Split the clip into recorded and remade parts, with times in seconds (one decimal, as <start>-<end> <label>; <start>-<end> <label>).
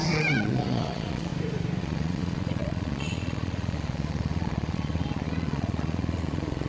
0.0-1.3 remade; 1.3-1.8 recorded; 1.8-6.7 remade